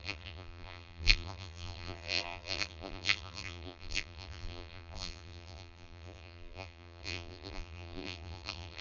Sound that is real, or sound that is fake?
fake